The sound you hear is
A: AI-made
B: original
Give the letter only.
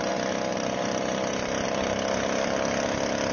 B